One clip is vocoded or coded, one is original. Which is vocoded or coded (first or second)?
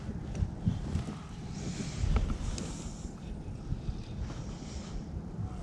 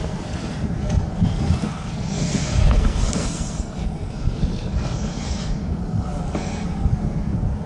second